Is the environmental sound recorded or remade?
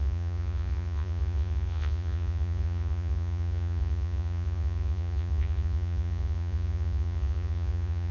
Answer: remade